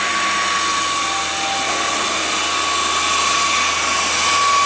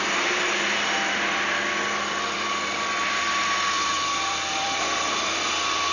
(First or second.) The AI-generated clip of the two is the second